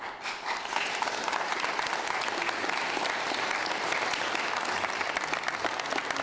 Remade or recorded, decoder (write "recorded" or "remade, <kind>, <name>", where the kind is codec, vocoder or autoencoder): recorded